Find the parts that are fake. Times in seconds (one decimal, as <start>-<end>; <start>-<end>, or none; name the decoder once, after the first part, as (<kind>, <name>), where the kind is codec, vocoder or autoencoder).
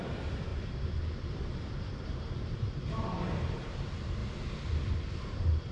0.0-0.5 (vocoder, BigVGAN v2); 1.8-4.2; 4.9-5.7